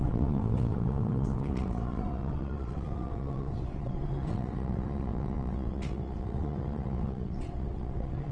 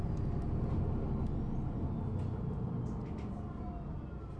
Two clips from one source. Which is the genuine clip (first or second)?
second